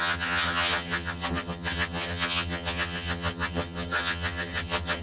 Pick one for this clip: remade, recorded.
remade